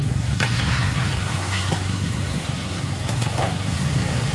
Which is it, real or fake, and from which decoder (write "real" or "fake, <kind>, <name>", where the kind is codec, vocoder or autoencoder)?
fake, codec, SNAC